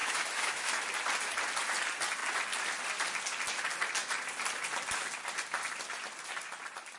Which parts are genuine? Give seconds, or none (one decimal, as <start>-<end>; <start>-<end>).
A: 0.7-7.0

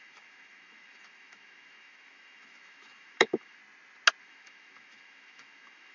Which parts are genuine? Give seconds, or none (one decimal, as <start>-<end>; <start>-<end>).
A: 3.6-4.2

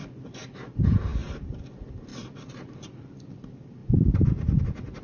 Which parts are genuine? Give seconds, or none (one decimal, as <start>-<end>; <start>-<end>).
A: 0.0-1.1; 1.7-2.1; 2.9-3.8; 4.6-5.0

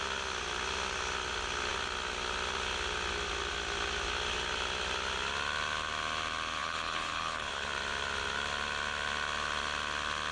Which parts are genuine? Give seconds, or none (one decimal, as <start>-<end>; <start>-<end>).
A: 0.0-6.6; 7.7-10.3

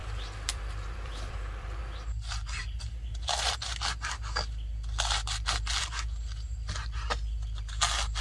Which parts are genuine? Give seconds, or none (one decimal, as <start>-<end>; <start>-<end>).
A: 1.8-8.2

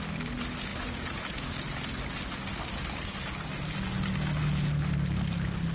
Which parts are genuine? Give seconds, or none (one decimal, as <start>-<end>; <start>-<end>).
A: 0.0-0.7; 1.5-5.7

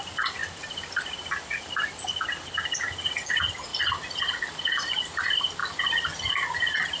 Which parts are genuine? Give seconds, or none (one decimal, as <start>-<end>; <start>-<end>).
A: 0.0-0.4; 1.0-7.0

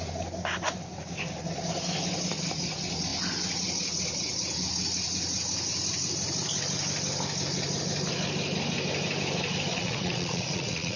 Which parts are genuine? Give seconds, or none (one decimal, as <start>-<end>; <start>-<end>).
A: 0.0-9.7